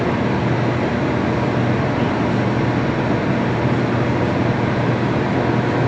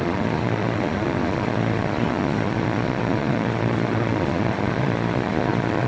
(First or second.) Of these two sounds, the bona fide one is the first